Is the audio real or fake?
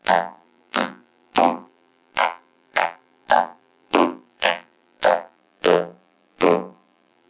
fake